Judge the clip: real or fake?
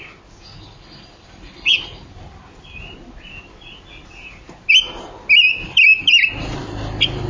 real